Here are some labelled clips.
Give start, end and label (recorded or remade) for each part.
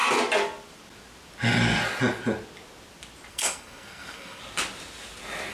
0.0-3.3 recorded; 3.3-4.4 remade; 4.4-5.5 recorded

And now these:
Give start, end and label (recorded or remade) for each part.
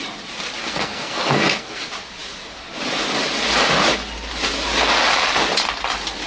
0.0-0.6 recorded; 0.6-1.8 remade; 1.8-6.3 recorded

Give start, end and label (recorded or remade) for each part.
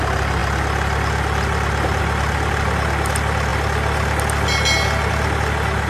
0.0-5.9 recorded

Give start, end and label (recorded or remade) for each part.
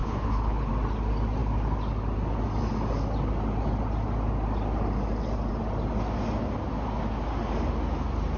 0.0-0.7 remade; 0.7-8.4 recorded